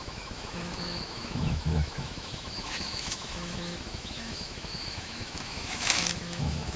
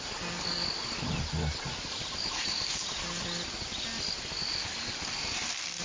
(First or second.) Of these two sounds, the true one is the second